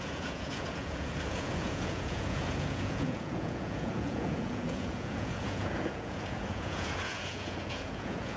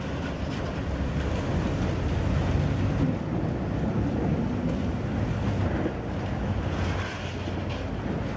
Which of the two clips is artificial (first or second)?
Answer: first